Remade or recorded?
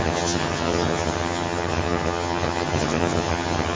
remade